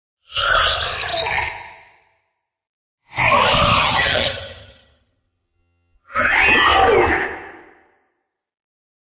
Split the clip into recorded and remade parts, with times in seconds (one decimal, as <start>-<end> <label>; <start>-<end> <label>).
0.0-3.8 recorded; 3.8-6.3 remade; 6.3-9.1 recorded